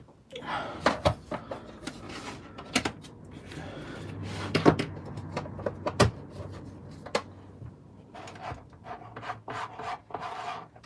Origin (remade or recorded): recorded